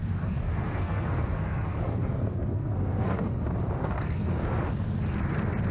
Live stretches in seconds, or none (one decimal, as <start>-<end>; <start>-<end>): 3.4-3.8; 4.6-5.7